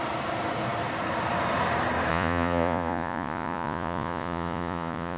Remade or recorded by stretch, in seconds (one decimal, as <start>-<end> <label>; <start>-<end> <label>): 0.0-2.1 recorded; 2.1-5.2 remade